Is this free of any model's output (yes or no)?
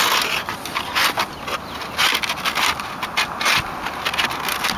yes